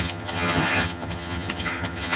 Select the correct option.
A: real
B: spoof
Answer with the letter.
B